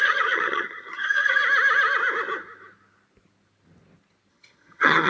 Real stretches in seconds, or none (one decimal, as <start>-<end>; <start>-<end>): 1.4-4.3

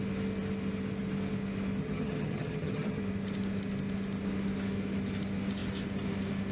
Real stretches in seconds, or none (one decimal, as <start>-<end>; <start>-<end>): 0.0-1.8; 3.0-6.5

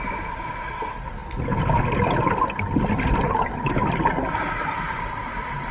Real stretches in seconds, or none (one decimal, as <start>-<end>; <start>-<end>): 0.0-5.7

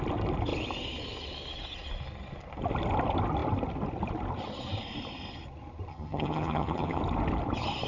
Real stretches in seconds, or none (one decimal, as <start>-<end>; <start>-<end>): 0.0-5.9; 7.0-7.9

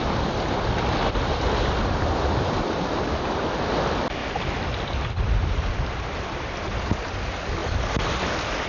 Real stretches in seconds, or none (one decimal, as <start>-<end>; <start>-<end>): 0.0-8.7

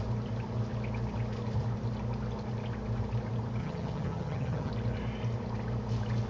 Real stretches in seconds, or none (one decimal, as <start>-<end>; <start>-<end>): 0.0-3.6; 4.7-6.3

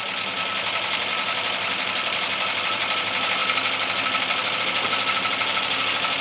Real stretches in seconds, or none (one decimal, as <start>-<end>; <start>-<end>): 0.0-6.2